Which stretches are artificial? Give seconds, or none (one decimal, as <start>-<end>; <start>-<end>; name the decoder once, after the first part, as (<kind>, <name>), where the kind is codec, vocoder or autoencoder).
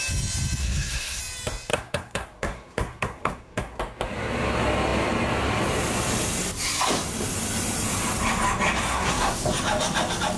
0.6-1.2 (codec, SNAC); 1.7-3.8; 8.8-9.4